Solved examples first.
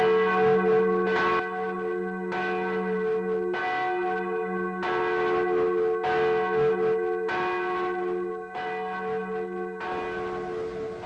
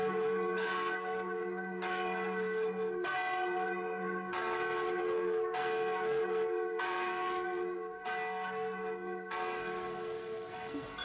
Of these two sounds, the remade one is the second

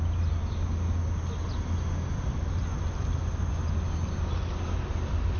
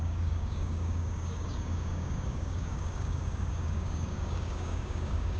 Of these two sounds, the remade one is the second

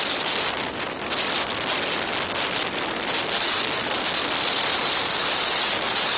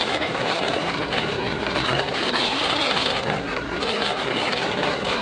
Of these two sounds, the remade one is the second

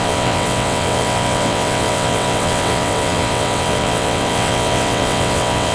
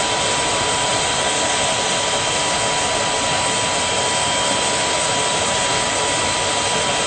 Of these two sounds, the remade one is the first